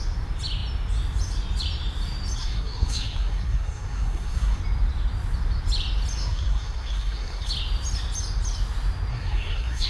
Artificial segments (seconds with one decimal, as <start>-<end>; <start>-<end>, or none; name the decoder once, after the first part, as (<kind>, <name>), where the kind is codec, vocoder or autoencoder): 2.4-4.6 (codec, SNAC); 6.2-7.5; 9.1-9.9